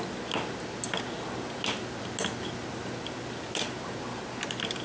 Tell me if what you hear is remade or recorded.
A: recorded